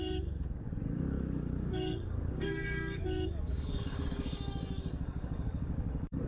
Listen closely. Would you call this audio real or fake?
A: fake